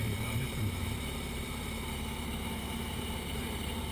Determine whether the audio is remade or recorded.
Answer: remade